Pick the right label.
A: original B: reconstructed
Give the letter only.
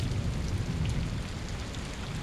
A